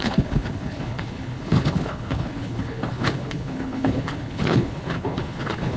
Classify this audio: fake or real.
fake